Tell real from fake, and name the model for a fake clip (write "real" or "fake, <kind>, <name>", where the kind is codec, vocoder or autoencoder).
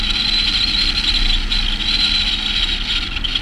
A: real